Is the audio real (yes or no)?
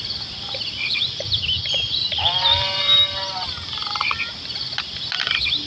no